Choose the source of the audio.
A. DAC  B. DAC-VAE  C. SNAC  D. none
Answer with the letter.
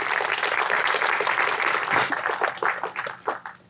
D